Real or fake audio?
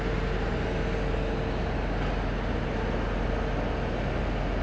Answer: real